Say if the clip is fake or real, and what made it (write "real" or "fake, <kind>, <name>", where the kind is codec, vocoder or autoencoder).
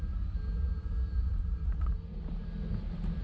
real